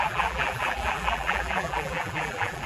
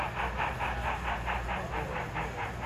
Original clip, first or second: second